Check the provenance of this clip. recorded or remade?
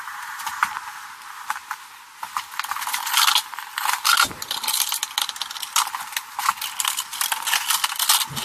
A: recorded